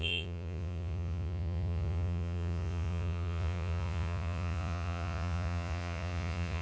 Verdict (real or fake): fake